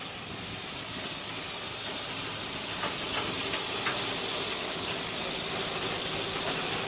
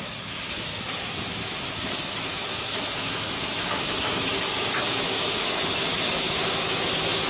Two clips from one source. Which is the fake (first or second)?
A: second